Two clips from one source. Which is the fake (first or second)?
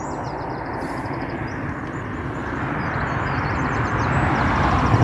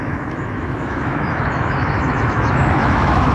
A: second